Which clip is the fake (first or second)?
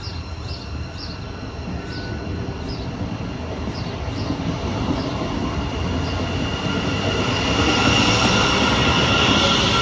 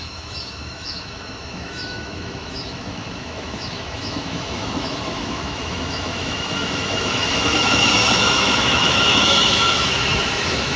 second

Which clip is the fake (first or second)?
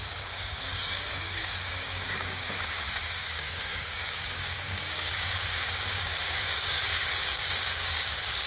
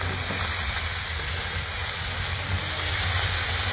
first